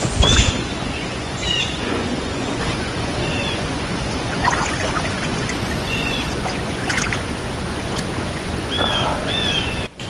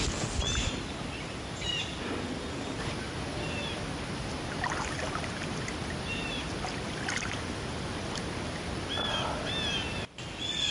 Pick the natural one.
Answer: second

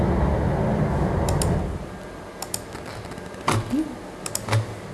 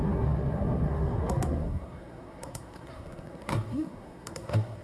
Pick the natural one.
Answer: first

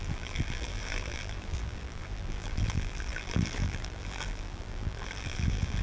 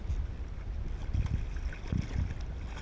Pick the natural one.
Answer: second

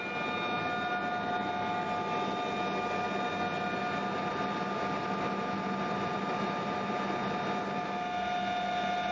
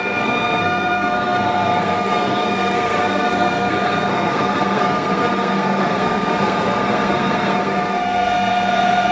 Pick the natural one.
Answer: first